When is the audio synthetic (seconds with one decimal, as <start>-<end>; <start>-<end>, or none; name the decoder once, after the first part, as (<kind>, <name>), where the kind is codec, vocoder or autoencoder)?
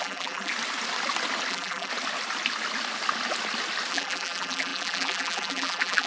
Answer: 0.0-0.5 (vocoder, BigVGAN v2); 1.5-1.9; 3.9-6.1